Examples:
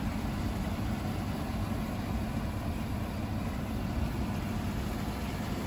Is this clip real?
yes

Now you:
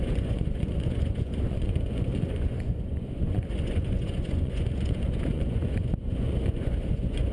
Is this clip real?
no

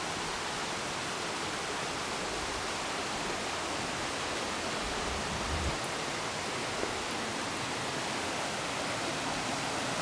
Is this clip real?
yes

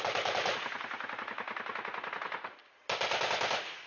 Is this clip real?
yes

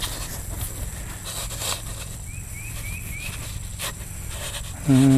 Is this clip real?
yes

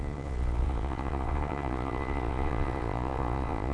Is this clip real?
no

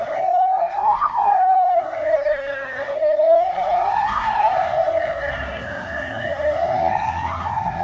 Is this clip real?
no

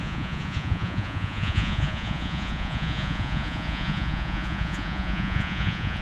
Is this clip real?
no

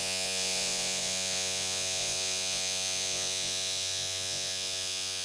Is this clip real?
no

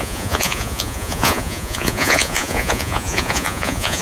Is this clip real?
no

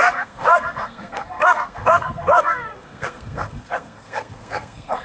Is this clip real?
no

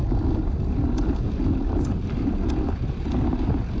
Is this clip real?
yes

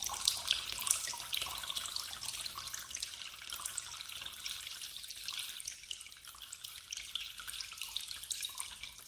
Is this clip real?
yes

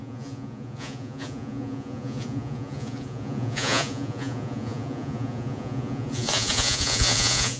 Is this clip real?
no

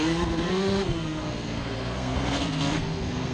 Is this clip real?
no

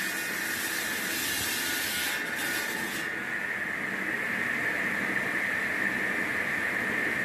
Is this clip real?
yes